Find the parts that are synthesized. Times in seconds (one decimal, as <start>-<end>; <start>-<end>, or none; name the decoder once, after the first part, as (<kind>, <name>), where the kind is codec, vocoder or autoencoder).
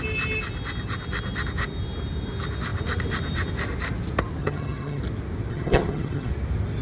4.4-5.0 (vocoder, HiFi-GAN); 5.5-6.3